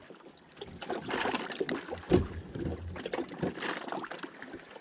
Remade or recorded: recorded